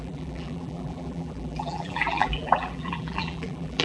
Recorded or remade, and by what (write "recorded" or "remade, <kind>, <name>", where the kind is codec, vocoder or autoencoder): remade, vocoder, BigVGAN v2